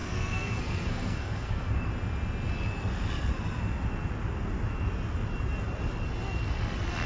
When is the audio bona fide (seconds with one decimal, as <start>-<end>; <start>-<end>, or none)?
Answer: 1.9-7.1